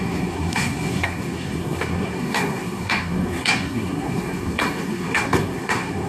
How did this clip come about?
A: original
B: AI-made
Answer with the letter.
B